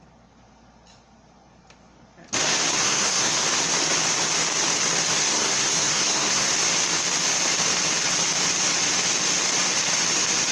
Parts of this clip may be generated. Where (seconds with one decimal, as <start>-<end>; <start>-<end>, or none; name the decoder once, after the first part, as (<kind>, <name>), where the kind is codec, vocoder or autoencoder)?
2.7-3.3 (codec, SNAC); 5.1-6.5